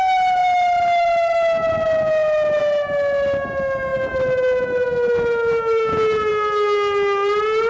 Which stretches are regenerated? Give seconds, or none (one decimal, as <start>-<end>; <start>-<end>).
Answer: none